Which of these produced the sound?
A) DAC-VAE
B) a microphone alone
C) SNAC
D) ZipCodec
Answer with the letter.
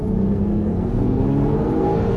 C